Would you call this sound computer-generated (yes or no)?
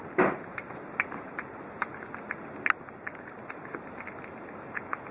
no